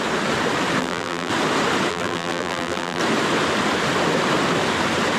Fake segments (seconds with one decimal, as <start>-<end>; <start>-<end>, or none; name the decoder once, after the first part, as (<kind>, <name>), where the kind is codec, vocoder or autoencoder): 0.8-1.3 (vocoder, BigVGAN v2); 1.9-3.0